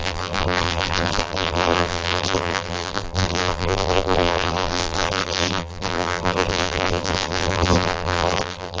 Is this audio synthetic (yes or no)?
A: yes